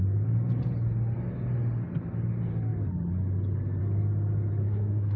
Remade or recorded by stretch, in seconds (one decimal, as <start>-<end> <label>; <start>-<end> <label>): 0.0-4.6 recorded; 4.6-5.2 remade